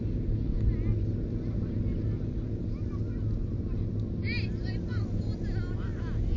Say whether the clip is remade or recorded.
recorded